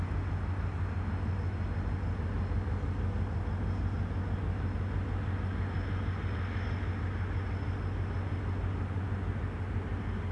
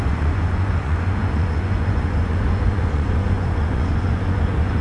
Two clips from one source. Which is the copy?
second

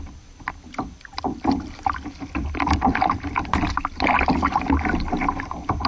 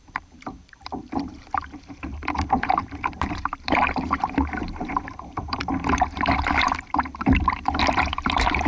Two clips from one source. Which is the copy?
second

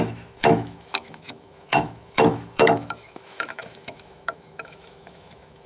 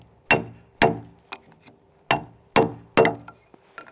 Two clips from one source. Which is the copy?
first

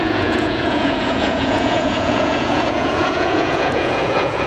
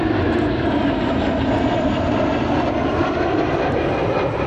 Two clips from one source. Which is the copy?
first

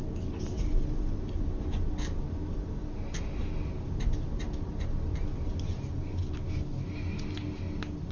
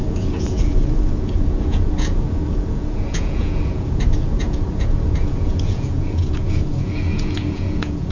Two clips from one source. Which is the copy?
second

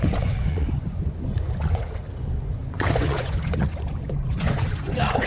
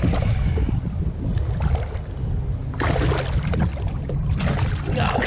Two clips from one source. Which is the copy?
first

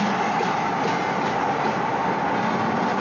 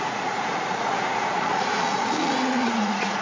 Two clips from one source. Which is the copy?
second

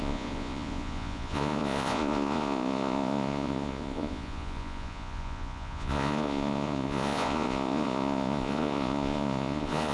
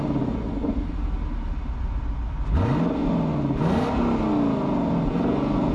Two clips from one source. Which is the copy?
first